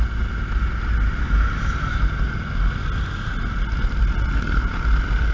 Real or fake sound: real